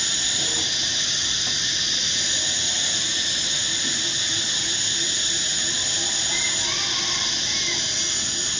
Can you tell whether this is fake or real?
real